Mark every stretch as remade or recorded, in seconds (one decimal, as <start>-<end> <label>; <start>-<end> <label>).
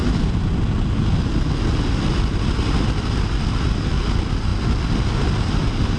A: 0.0-6.0 recorded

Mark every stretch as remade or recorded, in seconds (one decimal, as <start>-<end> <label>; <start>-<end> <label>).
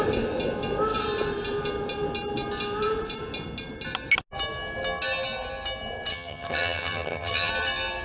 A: 0.0-6.1 recorded; 6.1-7.5 remade; 7.5-8.0 recorded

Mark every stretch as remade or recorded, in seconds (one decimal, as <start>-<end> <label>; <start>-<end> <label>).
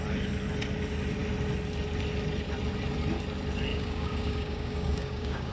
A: 0.0-3.7 recorded; 3.7-5.5 remade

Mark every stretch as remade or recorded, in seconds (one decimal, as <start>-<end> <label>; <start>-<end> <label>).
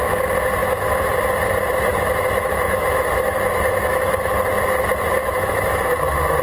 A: 0.0-1.9 recorded; 1.9-4.5 remade; 4.5-5.2 recorded; 5.2-6.0 remade; 6.0-6.4 recorded